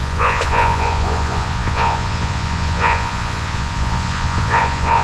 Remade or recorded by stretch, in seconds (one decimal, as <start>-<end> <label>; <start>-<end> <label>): 0.0-5.0 remade